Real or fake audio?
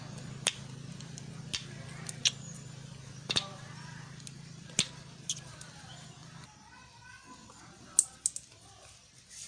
real